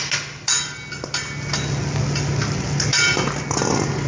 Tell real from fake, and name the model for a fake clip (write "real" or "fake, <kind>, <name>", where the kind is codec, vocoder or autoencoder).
real